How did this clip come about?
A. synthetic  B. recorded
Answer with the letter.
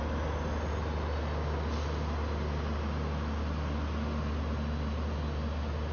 B